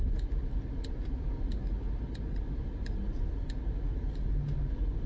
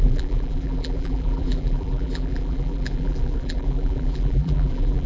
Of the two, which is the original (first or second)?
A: first